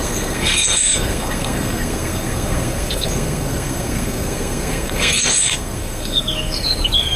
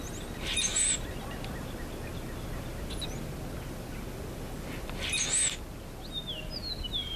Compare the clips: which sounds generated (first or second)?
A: first